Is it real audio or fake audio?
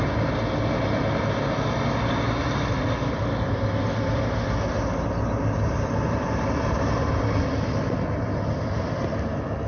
real